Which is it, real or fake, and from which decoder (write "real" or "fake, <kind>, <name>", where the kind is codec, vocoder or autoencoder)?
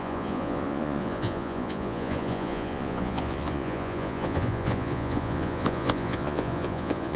fake, vocoder, Vocos